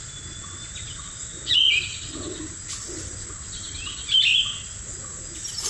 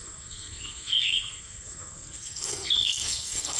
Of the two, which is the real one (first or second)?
first